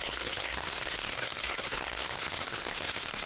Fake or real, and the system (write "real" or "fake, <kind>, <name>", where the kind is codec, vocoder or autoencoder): fake, codec, SNAC